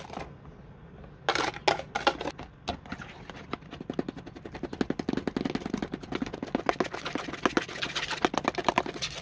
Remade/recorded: recorded